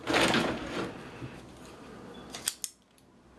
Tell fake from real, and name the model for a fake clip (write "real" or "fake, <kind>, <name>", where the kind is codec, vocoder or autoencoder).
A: real